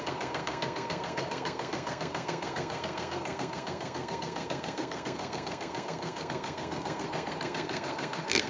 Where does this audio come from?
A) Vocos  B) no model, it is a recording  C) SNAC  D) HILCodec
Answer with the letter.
C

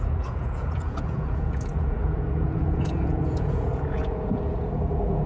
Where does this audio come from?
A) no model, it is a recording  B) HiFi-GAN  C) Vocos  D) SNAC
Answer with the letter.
C